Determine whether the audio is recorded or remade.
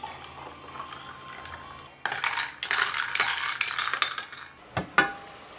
recorded